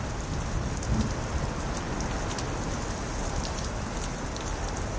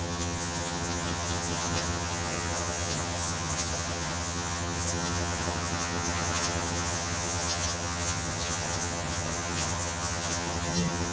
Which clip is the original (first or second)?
first